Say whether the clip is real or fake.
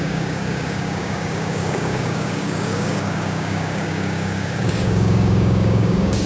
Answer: fake